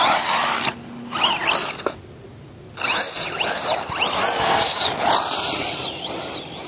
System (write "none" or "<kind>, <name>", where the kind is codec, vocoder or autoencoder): none